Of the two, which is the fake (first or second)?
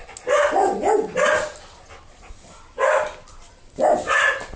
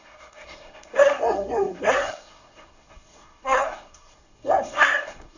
second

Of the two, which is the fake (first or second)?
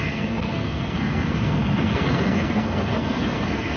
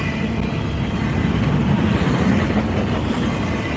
first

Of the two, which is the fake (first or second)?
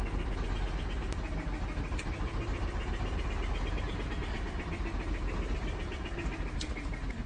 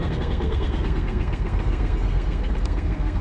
second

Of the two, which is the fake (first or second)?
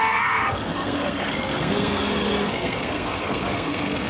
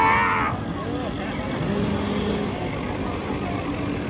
first